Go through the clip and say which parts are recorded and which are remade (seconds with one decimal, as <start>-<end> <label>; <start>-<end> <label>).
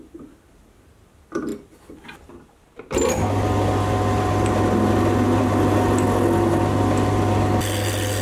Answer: 0.0-8.2 recorded